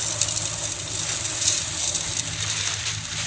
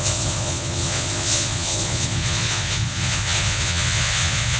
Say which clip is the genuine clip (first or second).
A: first